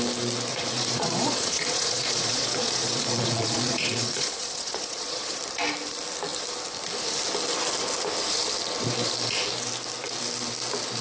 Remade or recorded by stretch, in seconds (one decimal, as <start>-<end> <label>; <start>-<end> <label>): 0.0-0.5 recorded; 0.5-5.4 remade; 5.4-11.0 recorded